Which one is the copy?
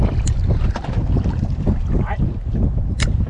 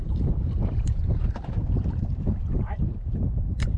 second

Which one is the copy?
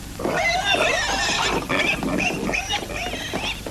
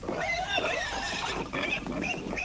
second